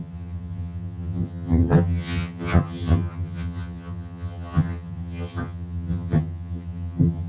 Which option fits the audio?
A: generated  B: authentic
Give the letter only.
A